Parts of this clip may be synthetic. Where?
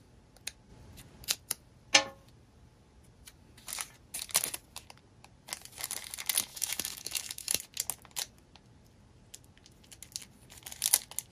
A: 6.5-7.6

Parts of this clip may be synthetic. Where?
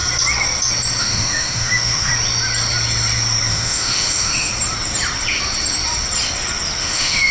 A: 1.0-2.1; 3.5-4.5; 6.8-7.3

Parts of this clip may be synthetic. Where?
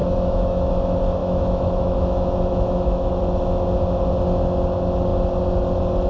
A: 0.0-0.7; 1.2-3.2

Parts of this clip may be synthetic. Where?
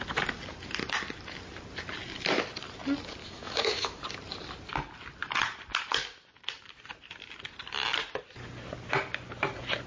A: 3.2-4.0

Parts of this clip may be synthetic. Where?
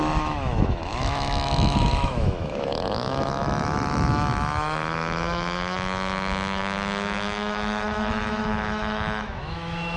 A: 0.0-10.0